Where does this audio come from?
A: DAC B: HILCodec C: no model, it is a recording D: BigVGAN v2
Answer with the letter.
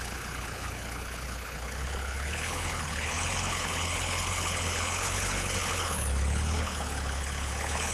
B